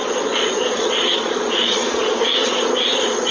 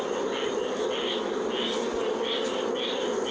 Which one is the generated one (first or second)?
first